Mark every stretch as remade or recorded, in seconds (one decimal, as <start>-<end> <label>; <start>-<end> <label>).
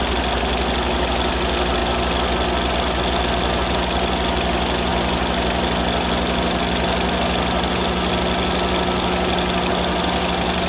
0.0-10.7 recorded